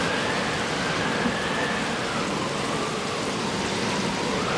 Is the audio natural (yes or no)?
yes